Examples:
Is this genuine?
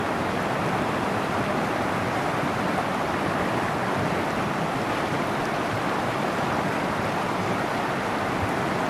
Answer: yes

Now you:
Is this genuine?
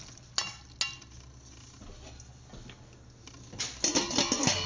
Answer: yes